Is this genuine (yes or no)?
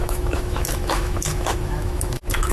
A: no